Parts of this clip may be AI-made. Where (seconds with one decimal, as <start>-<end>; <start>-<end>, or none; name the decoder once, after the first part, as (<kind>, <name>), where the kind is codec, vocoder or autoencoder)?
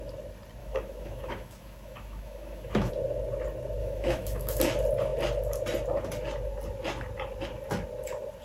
0.6-2.9 (autoencoder, DAC-VAE); 3.8-4.6